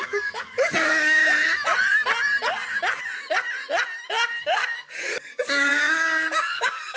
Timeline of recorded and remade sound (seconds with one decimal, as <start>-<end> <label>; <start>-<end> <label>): 0.0-1.2 remade; 1.2-4.4 recorded; 4.4-7.0 remade